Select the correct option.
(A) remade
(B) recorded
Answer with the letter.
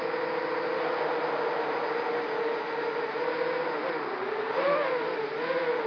B